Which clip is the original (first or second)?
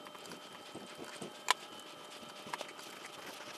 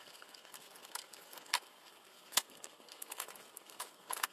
first